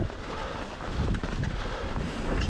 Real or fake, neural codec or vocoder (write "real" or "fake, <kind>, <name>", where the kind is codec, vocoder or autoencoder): real